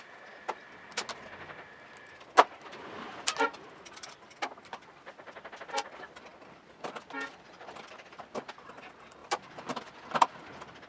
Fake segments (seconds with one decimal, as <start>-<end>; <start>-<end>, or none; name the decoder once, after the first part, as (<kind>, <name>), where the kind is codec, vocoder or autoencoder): 9.2-9.8 (vocoder, BigVGAN v2)